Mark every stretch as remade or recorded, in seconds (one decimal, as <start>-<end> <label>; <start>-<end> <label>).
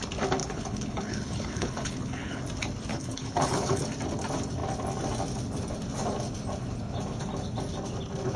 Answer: 0.0-0.4 recorded; 0.4-2.4 remade; 2.4-2.9 recorded; 2.9-3.8 remade; 3.8-8.4 recorded